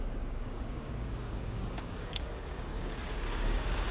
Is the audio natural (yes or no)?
no